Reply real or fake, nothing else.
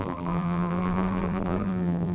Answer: fake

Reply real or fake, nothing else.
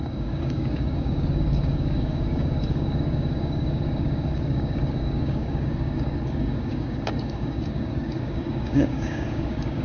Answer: fake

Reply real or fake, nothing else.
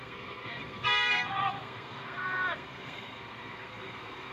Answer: fake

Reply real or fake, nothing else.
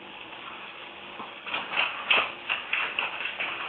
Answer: fake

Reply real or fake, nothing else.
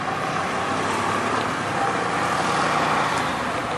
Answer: fake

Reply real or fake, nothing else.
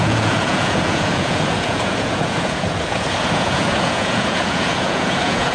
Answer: fake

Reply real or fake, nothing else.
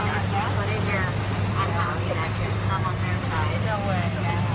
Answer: real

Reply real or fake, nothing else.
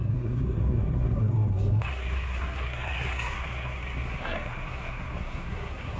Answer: fake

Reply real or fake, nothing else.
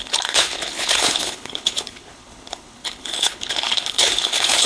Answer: fake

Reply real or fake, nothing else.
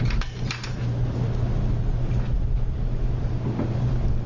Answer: real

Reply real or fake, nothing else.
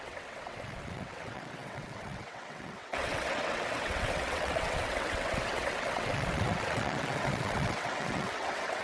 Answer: fake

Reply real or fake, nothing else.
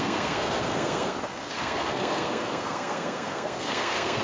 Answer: fake